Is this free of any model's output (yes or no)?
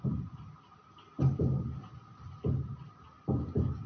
yes